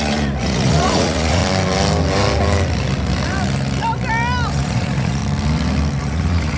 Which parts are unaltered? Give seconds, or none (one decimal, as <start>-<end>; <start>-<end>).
1.4-4.5; 5.2-6.0